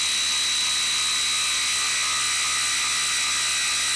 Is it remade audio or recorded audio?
recorded